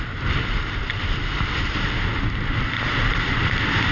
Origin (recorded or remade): recorded